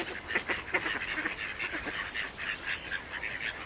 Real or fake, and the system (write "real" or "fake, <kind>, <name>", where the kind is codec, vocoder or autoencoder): real